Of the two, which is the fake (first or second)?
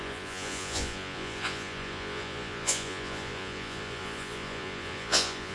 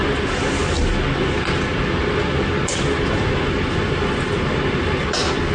first